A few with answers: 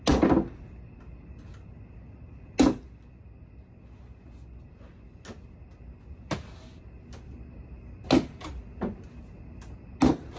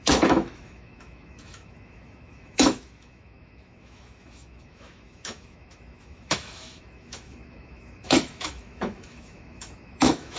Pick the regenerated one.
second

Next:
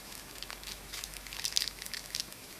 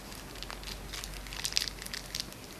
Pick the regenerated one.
first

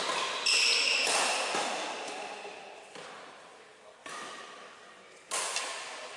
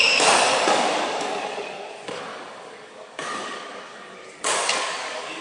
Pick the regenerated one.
second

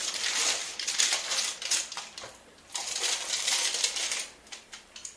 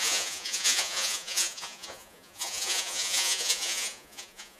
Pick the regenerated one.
second